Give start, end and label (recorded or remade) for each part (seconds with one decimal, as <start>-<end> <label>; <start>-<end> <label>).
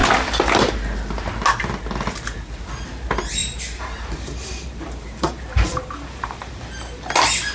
0.0-3.4 recorded; 3.4-6.5 remade; 6.5-7.5 recorded